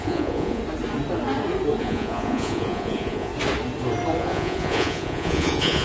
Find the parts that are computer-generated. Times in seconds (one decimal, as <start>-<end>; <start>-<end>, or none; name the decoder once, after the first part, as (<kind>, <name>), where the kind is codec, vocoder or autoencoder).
0.0-0.6 (vocoder, Vocos); 1.8-3.3; 4.2-5.8